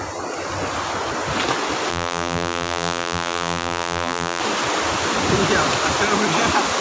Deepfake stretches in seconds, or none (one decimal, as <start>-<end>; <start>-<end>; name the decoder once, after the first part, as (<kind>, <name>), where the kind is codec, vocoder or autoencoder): 1.9-4.4 (vocoder, BigVGAN v2)